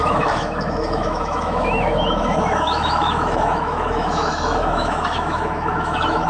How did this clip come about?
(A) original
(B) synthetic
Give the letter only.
B